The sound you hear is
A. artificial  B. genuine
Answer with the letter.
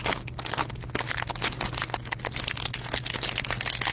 B